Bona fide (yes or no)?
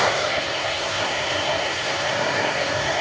no